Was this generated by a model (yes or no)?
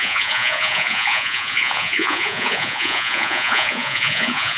yes